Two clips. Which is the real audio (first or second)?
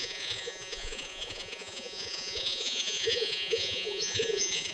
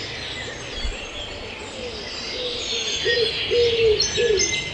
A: second